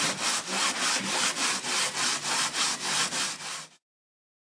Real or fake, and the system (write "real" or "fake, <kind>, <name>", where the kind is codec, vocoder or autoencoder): real